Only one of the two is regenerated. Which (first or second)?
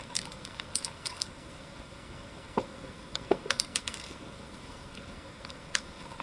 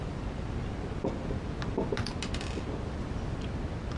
first